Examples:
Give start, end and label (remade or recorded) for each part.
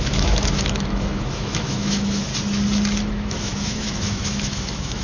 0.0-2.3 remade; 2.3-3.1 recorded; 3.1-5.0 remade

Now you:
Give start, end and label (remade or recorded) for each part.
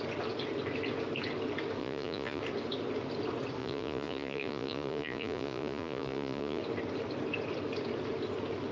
0.0-1.8 recorded; 1.8-2.4 remade; 2.4-3.6 recorded; 3.6-6.6 remade; 6.6-8.7 recorded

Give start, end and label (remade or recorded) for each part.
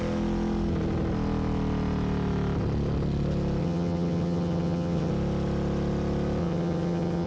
0.0-3.6 recorded; 3.6-5.1 remade; 5.1-6.4 recorded; 6.4-7.3 remade